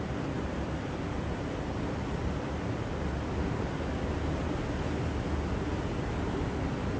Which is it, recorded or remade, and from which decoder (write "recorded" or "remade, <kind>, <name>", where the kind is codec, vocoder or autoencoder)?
recorded